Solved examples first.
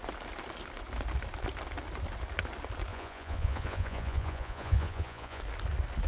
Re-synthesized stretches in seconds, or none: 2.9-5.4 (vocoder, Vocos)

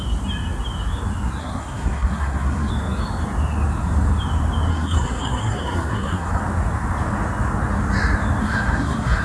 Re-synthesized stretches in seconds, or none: 1.4-2.7 (codec, SNAC); 4.7-6.4; 8.4-9.2

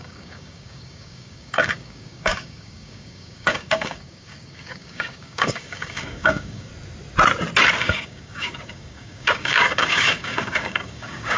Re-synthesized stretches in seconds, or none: 0.0-6.7 (codec, DAC); 7.8-11.4

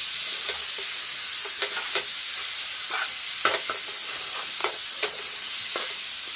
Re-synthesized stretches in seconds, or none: 4.6-5.5 (vocoder, WaveNeXt)

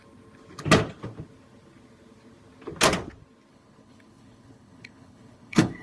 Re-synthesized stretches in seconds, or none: 3.5-5.8 (codec, HILCodec)